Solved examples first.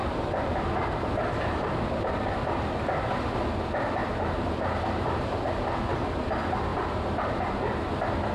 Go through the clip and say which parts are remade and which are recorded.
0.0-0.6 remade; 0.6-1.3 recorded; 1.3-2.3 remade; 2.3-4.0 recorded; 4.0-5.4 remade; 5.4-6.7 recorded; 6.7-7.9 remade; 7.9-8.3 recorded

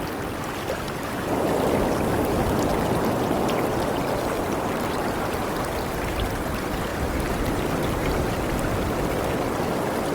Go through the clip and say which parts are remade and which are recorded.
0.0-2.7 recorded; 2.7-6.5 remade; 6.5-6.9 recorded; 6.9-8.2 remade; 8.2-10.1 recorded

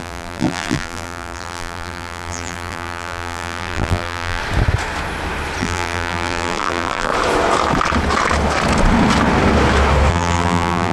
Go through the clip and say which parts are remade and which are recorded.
0.0-4.4 remade; 4.4-5.6 recorded; 5.6-7.1 remade; 7.1-10.1 recorded; 10.1-10.9 remade

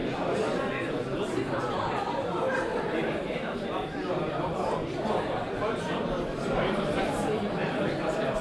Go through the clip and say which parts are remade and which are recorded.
0.0-0.9 recorded; 0.9-8.4 remade